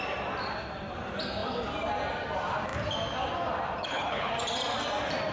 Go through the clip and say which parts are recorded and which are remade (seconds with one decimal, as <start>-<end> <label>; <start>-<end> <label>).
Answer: 0.0-3.8 recorded; 3.8-4.3 remade; 4.3-5.3 recorded

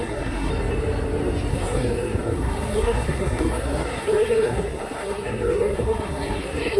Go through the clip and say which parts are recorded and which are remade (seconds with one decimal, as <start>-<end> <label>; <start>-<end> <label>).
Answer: 0.0-0.5 remade; 0.5-1.5 recorded; 1.5-6.8 remade

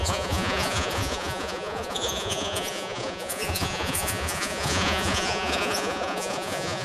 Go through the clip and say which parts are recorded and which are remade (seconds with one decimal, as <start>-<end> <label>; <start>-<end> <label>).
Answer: 0.0-6.8 remade

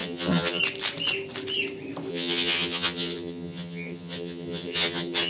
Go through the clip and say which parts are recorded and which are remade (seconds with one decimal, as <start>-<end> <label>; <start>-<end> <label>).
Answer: 0.0-0.6 remade; 0.6-2.1 recorded; 2.1-5.3 remade

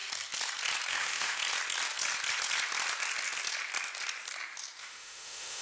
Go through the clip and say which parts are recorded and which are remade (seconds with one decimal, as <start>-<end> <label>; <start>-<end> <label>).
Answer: 0.0-0.9 recorded; 0.9-1.4 remade; 1.4-4.8 recorded; 4.8-5.6 remade

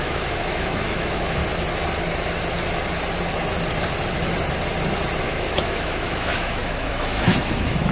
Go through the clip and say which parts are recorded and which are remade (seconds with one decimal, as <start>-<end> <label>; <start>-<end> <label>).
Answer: 0.0-1.4 remade; 1.4-5.2 recorded; 5.2-7.9 remade

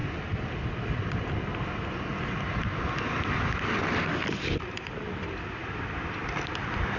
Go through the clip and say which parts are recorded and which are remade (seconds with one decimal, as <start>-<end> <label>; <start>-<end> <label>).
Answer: 0.0-7.0 recorded